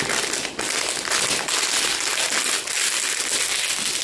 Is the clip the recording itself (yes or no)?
yes